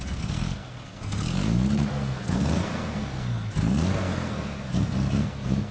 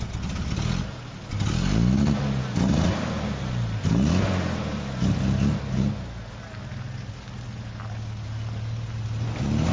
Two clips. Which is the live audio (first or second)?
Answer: second